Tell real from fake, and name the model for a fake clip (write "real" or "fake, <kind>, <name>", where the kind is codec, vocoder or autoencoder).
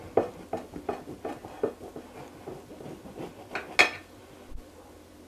real